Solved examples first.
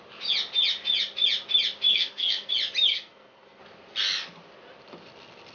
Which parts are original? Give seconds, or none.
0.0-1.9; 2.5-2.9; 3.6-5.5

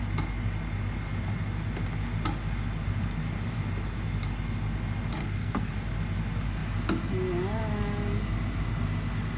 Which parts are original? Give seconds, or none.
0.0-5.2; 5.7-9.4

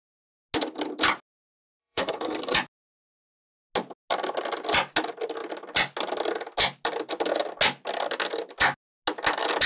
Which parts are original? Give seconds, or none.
0.0-1.8; 2.4-9.7

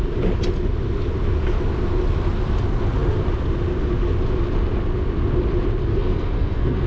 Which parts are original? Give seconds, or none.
0.0-5.9

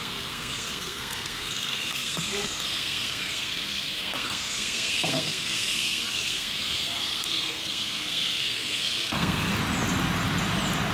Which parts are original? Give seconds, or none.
9.5-10.9

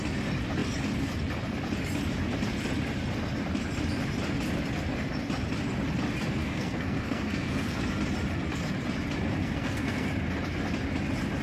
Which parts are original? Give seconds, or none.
0.0-6.4; 7.8-9.4; 10.1-11.4

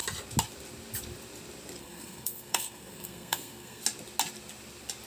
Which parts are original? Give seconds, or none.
0.0-1.8; 3.8-5.1